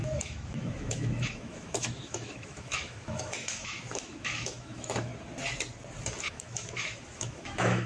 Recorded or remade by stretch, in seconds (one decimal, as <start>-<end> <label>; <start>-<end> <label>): 0.0-5.1 remade; 5.1-6.2 recorded; 6.2-7.9 remade

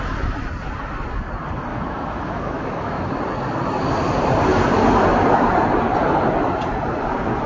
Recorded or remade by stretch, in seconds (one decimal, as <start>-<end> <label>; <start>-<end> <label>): 0.0-1.7 recorded; 1.7-3.1 remade; 3.1-7.5 recorded

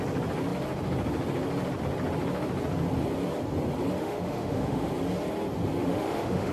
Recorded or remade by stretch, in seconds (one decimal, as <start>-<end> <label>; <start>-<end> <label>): 0.0-4.0 recorded; 4.0-4.9 remade; 4.9-5.8 recorded; 5.8-6.5 remade